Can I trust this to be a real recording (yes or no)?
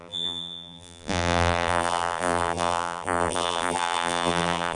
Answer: no